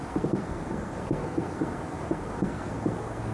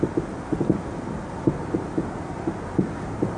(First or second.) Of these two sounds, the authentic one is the second